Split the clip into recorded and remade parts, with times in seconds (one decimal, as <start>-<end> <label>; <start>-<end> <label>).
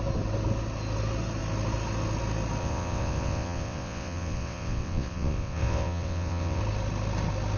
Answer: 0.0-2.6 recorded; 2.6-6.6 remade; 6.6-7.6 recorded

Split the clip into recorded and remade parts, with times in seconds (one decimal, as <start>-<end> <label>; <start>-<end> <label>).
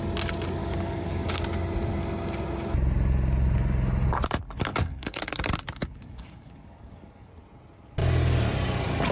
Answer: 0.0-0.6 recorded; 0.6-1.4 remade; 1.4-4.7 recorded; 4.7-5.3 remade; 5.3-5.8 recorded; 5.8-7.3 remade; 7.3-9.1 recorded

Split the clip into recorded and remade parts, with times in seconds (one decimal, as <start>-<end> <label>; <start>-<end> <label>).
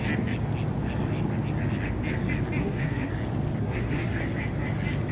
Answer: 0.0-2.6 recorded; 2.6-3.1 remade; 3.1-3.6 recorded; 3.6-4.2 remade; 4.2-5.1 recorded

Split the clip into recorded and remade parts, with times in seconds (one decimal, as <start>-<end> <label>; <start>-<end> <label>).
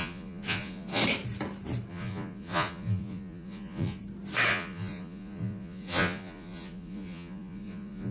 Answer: 0.0-1.0 remade; 1.0-1.9 recorded; 1.9-4.0 remade; 4.0-4.5 recorded; 4.5-8.1 remade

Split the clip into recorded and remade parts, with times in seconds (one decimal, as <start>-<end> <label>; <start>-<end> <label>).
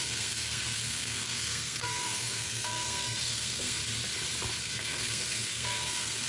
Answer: 0.0-3.8 remade; 3.8-4.6 recorded; 4.6-6.3 remade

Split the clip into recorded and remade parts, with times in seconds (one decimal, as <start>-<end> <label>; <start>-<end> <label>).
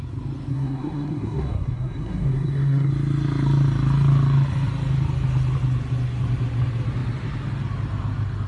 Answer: 0.0-0.5 recorded; 0.5-2.9 remade; 2.9-8.5 recorded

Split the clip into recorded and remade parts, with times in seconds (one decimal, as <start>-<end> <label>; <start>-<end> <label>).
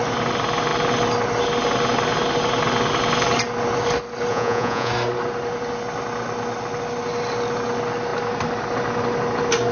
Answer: 0.0-4.3 recorded; 4.3-4.9 remade; 4.9-9.7 recorded